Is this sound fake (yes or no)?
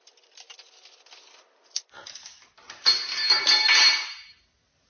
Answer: no